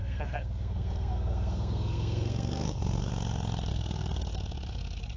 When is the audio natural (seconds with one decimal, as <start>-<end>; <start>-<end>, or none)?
3.1-3.7; 4.3-5.2